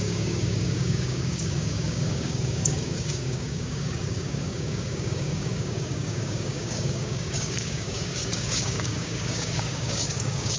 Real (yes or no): no